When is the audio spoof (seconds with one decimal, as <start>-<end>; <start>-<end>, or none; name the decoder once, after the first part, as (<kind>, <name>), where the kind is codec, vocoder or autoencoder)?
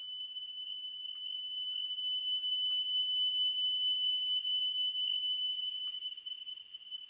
none